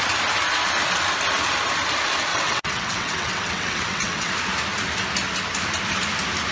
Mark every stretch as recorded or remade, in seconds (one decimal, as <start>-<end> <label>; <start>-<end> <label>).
0.0-2.3 recorded; 2.3-4.3 remade; 4.3-6.5 recorded